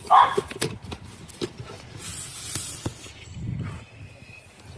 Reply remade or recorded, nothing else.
recorded